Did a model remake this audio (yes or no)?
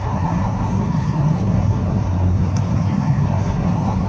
yes